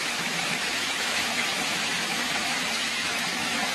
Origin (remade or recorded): remade